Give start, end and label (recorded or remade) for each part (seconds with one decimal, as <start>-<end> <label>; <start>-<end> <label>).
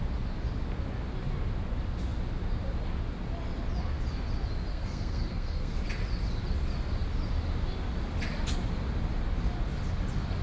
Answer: 0.0-4.7 recorded; 4.7-5.8 remade; 5.8-10.4 recorded